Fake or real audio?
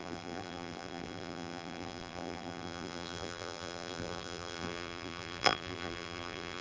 fake